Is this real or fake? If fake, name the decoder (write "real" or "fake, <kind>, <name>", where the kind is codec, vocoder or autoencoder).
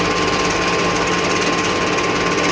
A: real